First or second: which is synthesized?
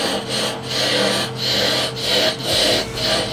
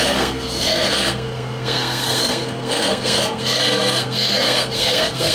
second